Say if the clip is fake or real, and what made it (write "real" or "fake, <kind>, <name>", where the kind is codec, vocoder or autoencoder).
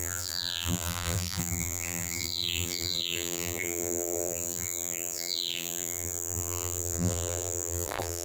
fake, vocoder, BigVGAN v2